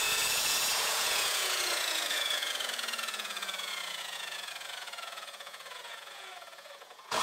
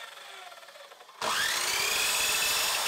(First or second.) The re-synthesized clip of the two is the first